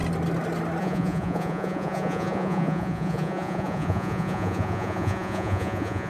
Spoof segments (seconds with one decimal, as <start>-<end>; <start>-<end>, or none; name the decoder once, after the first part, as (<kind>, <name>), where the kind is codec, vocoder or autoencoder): 0.8-6.1 (vocoder, Vocos)